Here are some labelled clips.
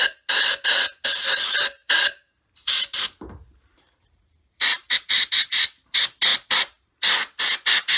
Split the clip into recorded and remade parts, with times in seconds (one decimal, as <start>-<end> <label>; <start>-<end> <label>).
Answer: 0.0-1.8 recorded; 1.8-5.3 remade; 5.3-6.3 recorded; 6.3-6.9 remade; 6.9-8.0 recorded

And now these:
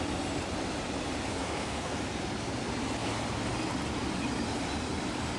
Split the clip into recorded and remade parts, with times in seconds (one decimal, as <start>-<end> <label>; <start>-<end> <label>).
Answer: 0.0-1.3 recorded; 1.3-2.0 remade; 2.0-5.4 recorded

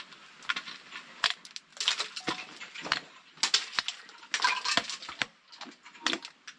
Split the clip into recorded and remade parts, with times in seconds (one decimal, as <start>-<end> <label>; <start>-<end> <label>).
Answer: 0.0-6.6 recorded